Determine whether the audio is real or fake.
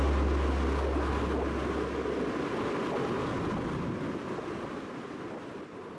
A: real